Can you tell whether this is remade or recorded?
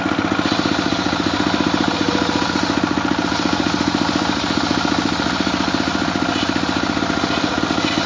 recorded